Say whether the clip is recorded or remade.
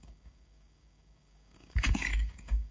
remade